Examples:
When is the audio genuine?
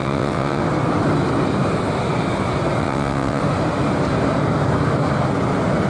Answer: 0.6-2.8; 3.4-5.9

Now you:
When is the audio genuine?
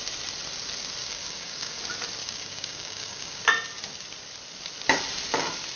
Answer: 0.0-1.0; 1.8-2.2; 3.4-5.8